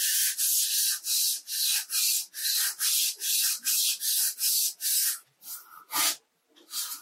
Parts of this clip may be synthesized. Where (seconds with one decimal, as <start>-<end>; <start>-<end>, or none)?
none